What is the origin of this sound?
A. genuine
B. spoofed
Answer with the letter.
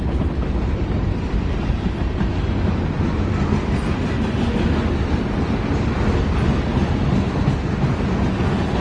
A